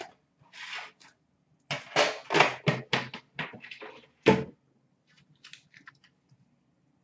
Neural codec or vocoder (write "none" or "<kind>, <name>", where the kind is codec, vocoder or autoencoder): none